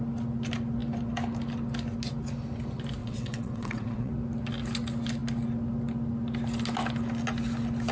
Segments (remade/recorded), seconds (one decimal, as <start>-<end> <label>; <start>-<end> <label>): 0.0-3.0 recorded; 3.0-4.1 remade; 4.1-7.9 recorded